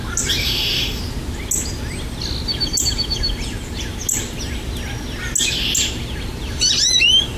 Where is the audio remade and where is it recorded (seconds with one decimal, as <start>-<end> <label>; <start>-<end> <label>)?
0.0-0.4 recorded; 0.4-1.0 remade; 1.0-7.4 recorded